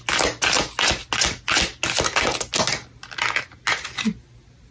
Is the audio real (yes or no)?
yes